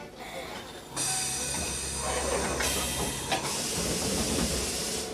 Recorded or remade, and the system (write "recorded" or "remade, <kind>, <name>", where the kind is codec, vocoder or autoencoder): recorded